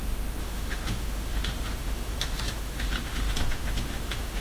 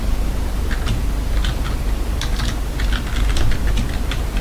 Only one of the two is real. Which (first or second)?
second